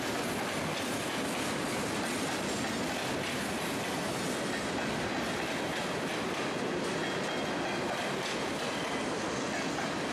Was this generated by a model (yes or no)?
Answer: no